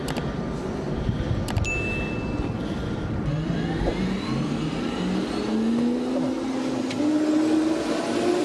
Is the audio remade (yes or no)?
no